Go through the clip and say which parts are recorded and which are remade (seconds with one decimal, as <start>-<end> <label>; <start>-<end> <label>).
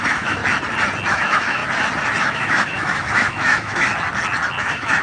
0.0-0.4 remade; 0.4-1.1 recorded; 1.1-1.6 remade; 1.6-2.2 recorded; 2.2-3.9 remade; 3.9-4.6 recorded; 4.6-5.0 remade